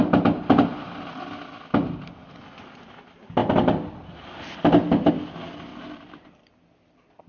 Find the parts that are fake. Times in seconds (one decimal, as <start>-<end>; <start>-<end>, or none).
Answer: 3.4-5.1; 5.7-6.3